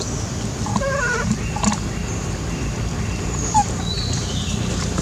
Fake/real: real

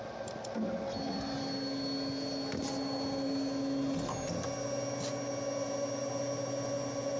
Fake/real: real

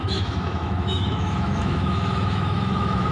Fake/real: fake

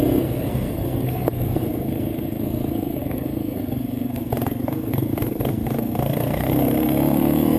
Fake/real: fake